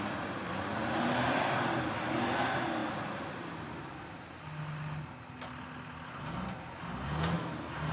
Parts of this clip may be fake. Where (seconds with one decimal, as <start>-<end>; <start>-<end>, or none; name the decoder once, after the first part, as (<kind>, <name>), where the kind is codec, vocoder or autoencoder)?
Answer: none